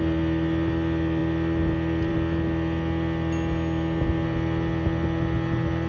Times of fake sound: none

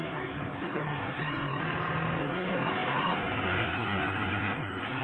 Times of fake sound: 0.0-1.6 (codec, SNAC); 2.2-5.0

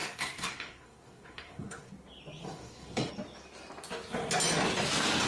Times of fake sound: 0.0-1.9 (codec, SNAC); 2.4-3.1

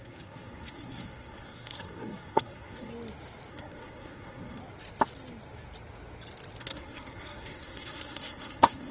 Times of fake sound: 0.0-2.9 (codec, SNAC); 3.5-4.6; 6.6-8.9

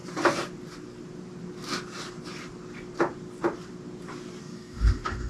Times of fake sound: 4.4-5.3 (codec, SNAC)

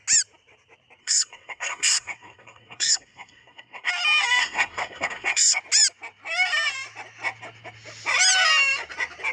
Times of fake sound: 1.0-3.9 (codec, SNAC); 4.4-5.6

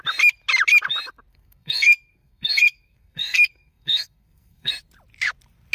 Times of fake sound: 1.3-4.7 (codec, SNAC)

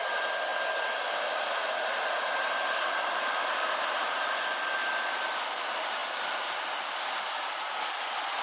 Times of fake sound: none